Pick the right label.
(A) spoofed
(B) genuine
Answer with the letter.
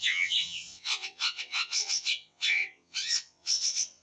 A